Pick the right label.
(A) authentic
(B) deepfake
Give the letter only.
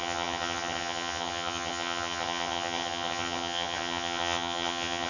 B